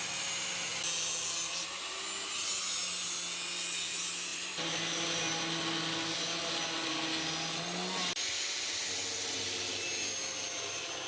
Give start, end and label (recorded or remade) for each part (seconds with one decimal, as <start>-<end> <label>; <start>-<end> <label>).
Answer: 0.0-11.1 recorded